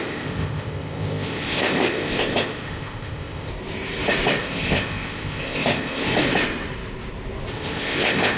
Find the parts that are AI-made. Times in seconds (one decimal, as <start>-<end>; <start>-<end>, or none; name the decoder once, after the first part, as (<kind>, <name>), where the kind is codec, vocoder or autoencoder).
0.0-3.5 (codec, ZipCodec); 4.4-6.1; 7.5-8.4